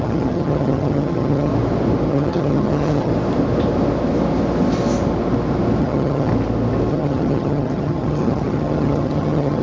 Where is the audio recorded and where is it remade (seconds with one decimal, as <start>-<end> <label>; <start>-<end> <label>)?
0.0-1.5 remade; 1.5-2.1 recorded; 2.1-3.1 remade; 3.1-5.8 recorded; 5.8-6.3 remade; 6.3-6.9 recorded; 6.9-9.6 remade